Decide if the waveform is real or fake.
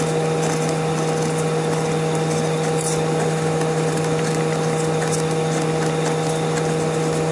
real